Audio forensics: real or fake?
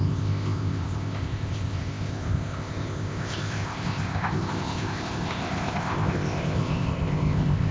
fake